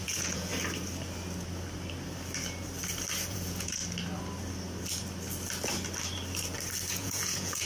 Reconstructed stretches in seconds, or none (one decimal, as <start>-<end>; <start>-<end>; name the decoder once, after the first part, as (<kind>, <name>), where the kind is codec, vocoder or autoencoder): 0.0-0.5 (vocoder, Vocos); 3.3-3.8; 6.9-7.7